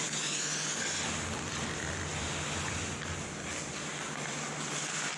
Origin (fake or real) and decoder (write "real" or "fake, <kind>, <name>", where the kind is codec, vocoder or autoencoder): real